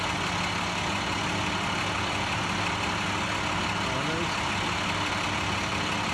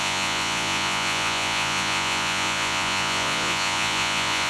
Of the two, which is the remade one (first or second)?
second